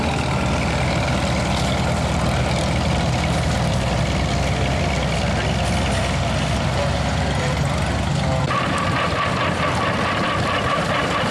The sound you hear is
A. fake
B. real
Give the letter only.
B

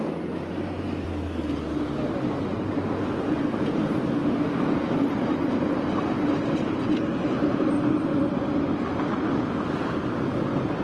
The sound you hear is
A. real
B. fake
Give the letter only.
A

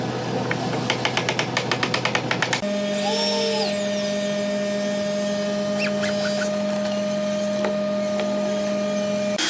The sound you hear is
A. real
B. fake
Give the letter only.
A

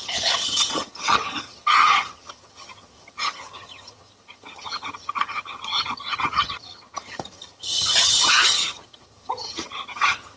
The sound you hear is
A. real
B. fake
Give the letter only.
B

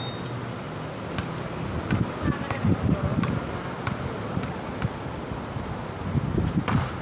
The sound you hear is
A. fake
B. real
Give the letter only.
B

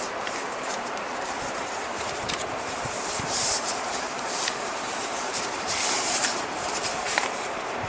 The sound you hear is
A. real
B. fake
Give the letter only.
B